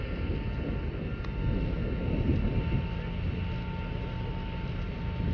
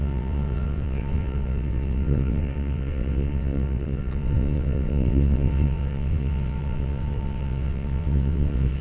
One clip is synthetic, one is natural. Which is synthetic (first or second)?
second